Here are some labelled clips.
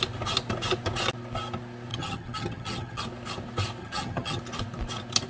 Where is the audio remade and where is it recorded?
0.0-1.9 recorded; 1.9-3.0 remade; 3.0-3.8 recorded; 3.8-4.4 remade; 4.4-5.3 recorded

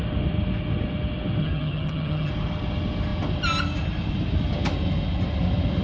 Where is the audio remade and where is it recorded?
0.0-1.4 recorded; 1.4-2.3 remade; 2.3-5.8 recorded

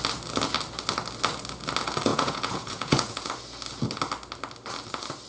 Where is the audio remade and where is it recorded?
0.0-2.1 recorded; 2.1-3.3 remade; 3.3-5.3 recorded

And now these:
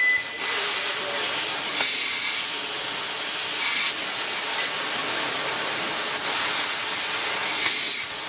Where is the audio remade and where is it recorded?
0.0-8.3 recorded